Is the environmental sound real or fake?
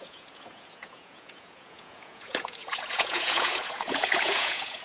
fake